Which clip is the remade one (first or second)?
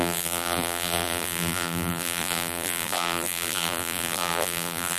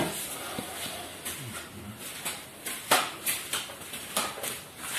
first